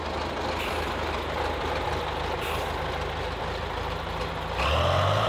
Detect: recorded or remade recorded